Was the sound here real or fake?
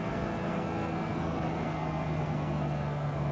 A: fake